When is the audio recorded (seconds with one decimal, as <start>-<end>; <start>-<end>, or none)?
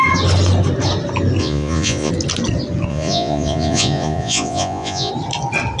0.0-1.4; 2.1-2.9; 5.1-5.8